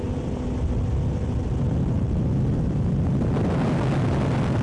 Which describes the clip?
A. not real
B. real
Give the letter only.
B